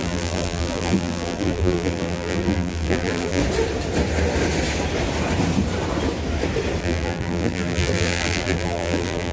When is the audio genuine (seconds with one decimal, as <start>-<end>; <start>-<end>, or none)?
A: 3.4-6.8